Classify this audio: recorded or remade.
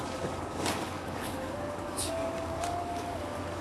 remade